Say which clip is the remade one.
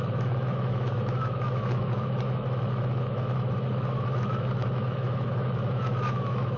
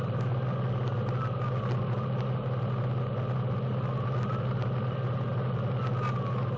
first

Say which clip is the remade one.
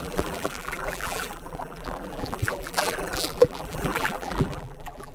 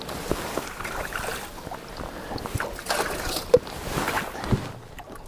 first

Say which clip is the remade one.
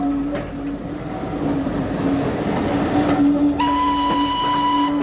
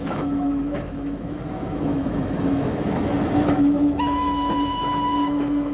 second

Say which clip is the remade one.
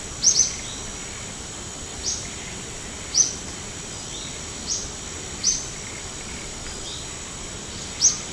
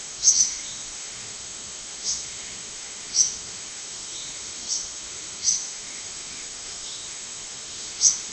second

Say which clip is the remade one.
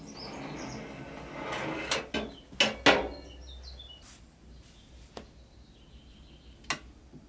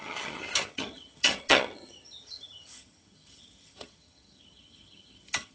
second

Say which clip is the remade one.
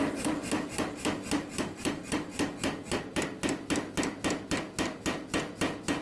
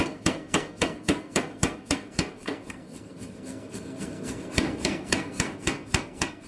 second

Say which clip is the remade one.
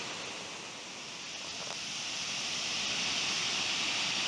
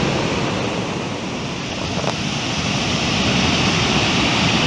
second